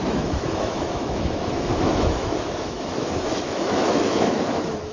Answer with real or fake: fake